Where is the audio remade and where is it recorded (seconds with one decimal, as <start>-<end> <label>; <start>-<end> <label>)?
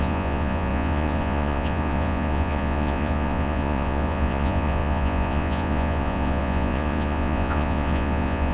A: 0.0-8.5 remade